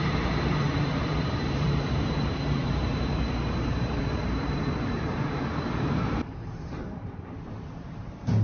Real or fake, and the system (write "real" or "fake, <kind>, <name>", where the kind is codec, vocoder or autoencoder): fake, vocoder, BigVGAN v2